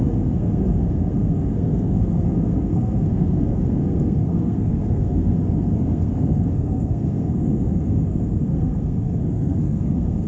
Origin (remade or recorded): remade